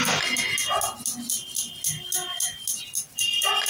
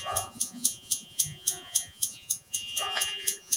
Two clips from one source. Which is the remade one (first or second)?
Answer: second